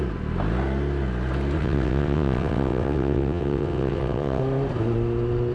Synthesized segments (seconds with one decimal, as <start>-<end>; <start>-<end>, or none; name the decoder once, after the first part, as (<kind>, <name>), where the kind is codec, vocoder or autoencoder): 1.6-4.4 (vocoder, WaveNeXt)